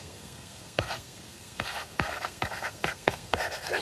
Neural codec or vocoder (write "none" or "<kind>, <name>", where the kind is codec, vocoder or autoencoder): codec, SNAC